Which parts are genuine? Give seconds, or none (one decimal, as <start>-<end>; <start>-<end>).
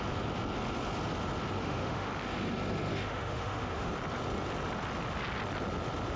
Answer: 0.0-1.6; 2.1-2.9; 3.9-6.2